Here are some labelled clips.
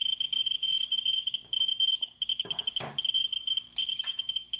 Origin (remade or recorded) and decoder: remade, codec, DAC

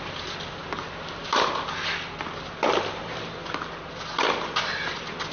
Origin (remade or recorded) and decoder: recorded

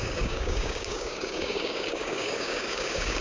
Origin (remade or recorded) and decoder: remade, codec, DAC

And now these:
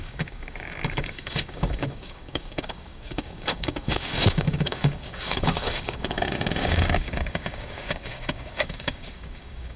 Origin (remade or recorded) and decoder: remade, codec, DAC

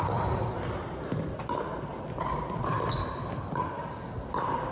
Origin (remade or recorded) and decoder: recorded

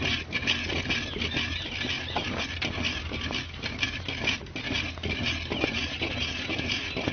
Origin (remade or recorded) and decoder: recorded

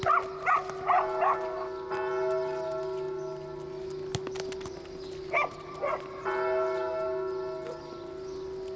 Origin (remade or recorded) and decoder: recorded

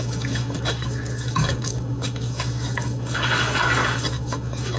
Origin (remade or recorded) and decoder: remade, codec, DAC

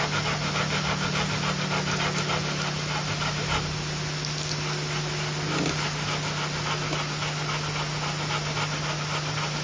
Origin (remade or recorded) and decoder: recorded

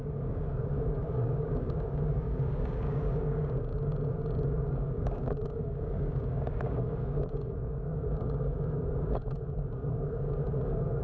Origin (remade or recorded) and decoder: remade, codec, DAC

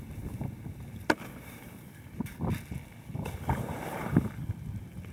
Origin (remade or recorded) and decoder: recorded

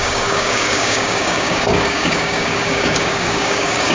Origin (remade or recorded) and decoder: remade, codec, DAC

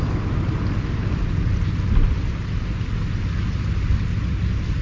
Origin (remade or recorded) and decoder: recorded